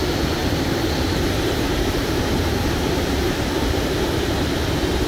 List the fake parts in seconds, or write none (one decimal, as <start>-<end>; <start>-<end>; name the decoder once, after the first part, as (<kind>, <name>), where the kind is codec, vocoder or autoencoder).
0.4-3.5 (vocoder, BigVGAN v2)